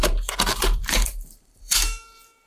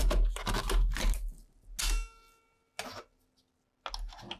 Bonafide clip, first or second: second